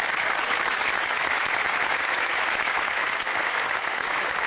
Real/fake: fake